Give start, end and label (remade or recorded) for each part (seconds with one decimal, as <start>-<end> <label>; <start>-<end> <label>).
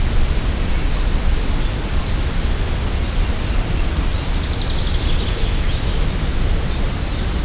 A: 0.0-7.4 recorded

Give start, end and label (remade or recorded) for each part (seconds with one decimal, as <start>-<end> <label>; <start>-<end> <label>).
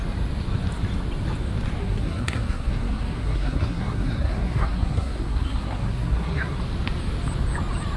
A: 0.0-1.8 recorded; 1.8-6.6 remade; 6.6-8.0 recorded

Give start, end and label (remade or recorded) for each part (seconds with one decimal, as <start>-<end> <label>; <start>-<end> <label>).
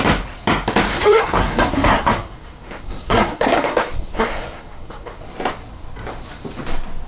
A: 0.0-0.9 recorded; 0.9-5.2 remade; 5.2-7.1 recorded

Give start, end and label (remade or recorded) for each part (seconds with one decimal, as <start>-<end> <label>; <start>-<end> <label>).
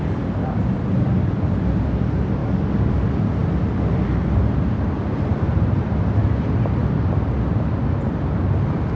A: 0.0-2.4 recorded; 2.4-3.0 remade; 3.0-9.0 recorded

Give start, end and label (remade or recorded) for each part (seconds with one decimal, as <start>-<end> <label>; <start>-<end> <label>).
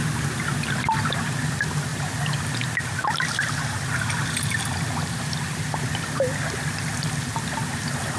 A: 0.0-8.2 recorded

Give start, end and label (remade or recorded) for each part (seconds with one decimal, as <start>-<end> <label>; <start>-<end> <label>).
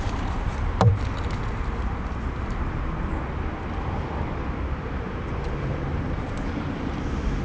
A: 0.0-0.9 remade; 0.9-4.8 recorded; 4.8-7.4 remade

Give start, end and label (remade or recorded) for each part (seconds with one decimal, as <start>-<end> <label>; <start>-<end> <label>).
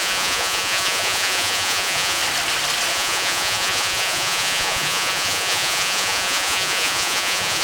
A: 0.0-2.2 remade; 2.2-2.9 recorded; 2.9-7.6 remade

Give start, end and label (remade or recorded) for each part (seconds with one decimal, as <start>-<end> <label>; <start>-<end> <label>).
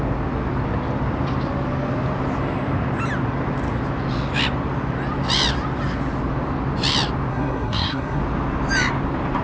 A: 0.0-7.3 recorded; 7.3-8.2 remade; 8.2-9.4 recorded